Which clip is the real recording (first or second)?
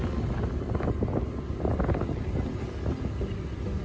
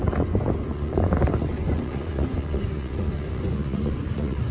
first